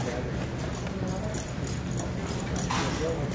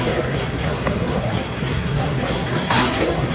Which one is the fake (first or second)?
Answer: second